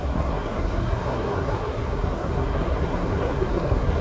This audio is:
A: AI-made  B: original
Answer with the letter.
A